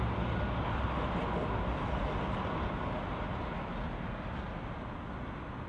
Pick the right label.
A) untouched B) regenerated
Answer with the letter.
A